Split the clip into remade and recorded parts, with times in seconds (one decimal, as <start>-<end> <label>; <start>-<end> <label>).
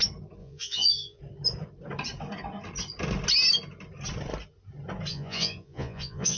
0.0-0.4 recorded; 0.4-1.2 remade; 1.2-5.1 recorded; 5.1-6.4 remade